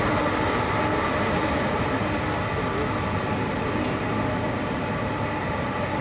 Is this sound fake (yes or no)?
no